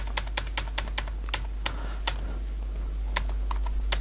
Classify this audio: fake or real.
real